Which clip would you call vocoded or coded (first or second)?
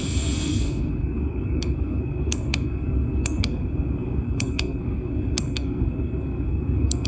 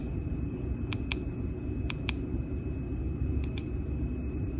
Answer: first